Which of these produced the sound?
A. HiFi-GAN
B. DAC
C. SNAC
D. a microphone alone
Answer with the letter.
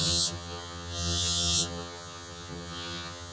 A